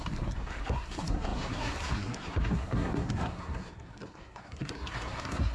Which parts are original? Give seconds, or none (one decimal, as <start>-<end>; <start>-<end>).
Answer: none